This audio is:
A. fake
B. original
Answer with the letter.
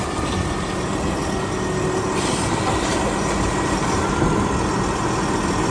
B